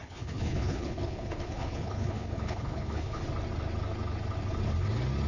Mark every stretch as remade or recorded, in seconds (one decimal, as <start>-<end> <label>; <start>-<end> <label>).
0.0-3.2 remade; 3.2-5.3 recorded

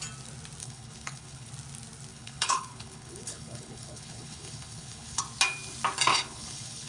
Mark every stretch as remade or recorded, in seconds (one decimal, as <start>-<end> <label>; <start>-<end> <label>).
0.0-0.6 recorded; 0.6-1.5 remade; 1.5-2.1 recorded; 2.1-5.2 remade; 5.2-6.1 recorded; 6.1-6.9 remade

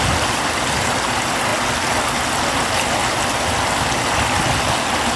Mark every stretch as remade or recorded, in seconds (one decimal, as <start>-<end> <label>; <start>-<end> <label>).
0.0-5.2 recorded

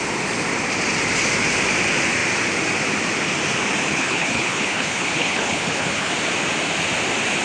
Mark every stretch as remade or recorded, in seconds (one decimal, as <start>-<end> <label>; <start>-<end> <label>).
0.0-3.9 recorded; 3.9-6.1 remade; 6.1-7.4 recorded